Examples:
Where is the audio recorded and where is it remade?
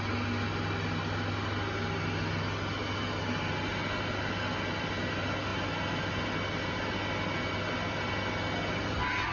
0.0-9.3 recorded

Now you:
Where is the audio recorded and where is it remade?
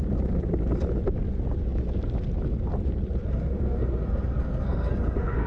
0.0-3.2 recorded; 3.2-5.5 remade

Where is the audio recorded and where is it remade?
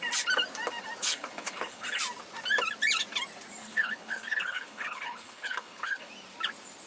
0.0-1.0 recorded; 1.0-2.0 remade; 2.0-3.6 recorded; 3.6-6.1 remade; 6.1-6.9 recorded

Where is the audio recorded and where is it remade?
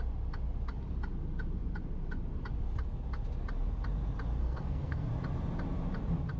0.0-4.4 recorded; 4.4-5.1 remade; 5.1-6.4 recorded